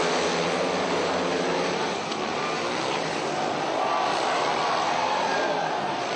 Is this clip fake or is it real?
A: fake